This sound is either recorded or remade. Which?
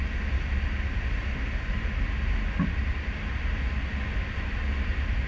recorded